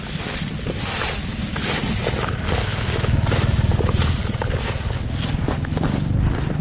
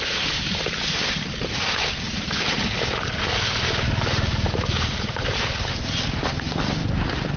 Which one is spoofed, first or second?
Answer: second